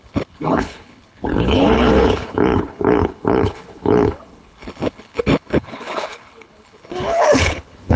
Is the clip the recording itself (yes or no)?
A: no